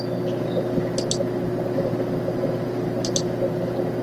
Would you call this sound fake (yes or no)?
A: no